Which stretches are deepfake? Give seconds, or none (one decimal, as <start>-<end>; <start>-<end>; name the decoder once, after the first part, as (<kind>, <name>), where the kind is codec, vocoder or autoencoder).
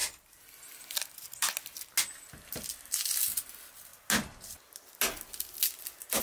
none